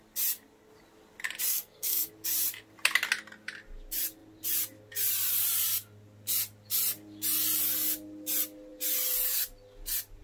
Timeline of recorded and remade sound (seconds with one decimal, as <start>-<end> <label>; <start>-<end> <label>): 0.0-1.5 recorded; 1.5-2.1 remade; 2.1-10.2 recorded